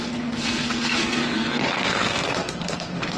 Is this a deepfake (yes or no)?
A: yes